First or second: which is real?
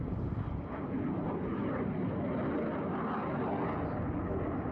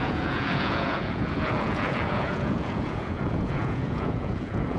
first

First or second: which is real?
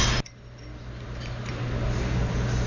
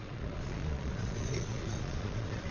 first